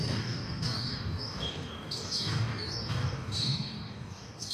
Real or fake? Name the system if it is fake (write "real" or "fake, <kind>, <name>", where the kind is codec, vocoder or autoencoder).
fake, codec, DAC